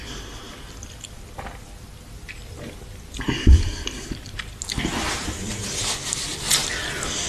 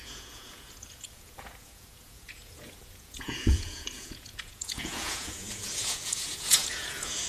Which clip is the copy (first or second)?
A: second